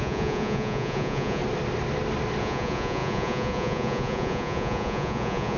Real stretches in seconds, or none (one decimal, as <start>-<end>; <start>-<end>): 1.4-2.4